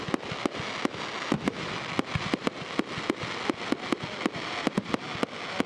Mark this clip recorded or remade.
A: recorded